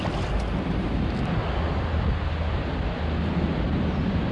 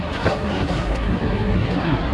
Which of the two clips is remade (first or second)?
second